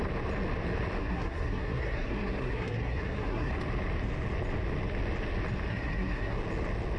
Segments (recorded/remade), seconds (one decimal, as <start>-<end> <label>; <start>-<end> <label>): 0.0-1.0 recorded; 1.0-3.5 remade; 3.5-5.7 recorded; 5.7-6.4 remade; 6.4-7.0 recorded